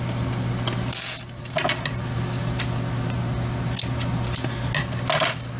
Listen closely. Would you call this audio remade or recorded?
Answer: recorded